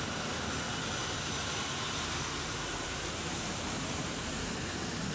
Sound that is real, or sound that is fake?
fake